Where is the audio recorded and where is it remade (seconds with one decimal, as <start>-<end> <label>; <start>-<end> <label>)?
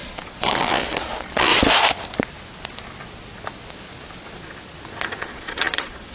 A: 0.0-1.5 remade; 1.5-5.2 recorded; 5.2-6.1 remade